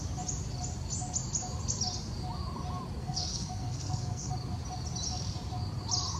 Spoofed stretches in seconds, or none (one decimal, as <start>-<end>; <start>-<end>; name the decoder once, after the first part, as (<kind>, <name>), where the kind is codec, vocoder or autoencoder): 3.0-4.3 (codec, SNAC)